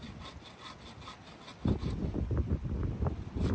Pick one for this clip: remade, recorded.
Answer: recorded